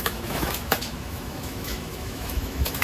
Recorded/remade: remade